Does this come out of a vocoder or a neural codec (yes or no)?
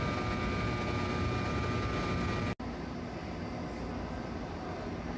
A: no